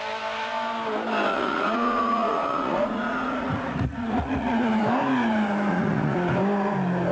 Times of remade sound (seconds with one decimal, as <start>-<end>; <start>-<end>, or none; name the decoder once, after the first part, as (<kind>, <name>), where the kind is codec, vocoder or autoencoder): 1.3-4.8 (vocoder, Vocos); 5.7-6.3